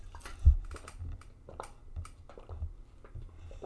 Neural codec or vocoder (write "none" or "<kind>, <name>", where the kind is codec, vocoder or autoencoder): none